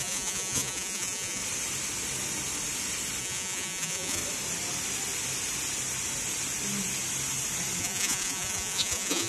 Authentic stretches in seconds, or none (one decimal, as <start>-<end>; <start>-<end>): 1.4-3.2; 4.2-7.8